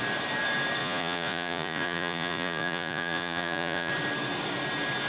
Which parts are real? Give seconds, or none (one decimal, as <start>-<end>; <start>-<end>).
0.0-0.8; 3.9-5.1